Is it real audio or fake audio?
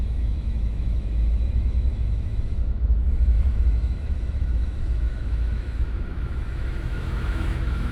fake